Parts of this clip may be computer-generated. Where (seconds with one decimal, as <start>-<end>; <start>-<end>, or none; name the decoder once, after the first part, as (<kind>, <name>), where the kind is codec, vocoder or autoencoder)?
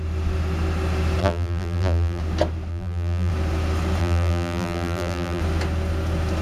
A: 1.2-2.2 (vocoder, BigVGAN v2); 2.7-3.3; 4.0-5.4